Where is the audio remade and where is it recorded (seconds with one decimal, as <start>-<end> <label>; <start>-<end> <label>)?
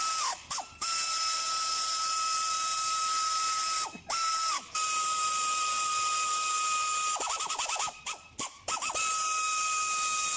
0.0-10.4 recorded